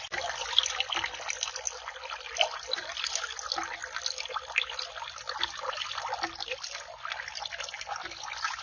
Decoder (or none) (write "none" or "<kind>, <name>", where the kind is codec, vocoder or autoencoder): none